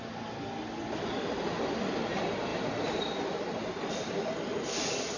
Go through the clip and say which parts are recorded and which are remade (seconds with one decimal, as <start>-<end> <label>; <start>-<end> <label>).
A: 0.0-5.2 recorded